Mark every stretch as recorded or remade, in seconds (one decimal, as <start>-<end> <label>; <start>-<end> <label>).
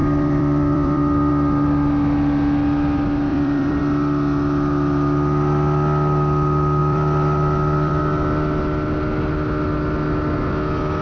0.0-1.3 remade; 1.3-3.3 recorded; 3.3-3.8 remade; 3.8-6.8 recorded; 6.8-8.0 remade; 8.0-11.0 recorded